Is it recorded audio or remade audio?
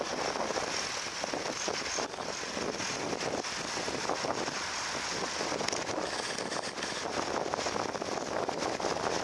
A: recorded